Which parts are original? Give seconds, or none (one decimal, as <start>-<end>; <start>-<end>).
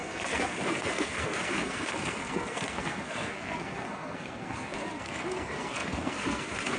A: none